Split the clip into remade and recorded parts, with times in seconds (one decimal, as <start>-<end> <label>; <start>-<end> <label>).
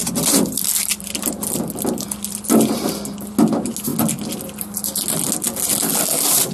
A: 0.0-3.3 remade; 3.3-6.5 recorded